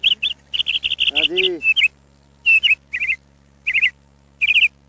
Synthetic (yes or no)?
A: no